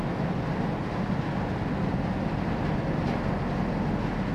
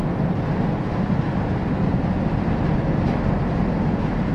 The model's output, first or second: second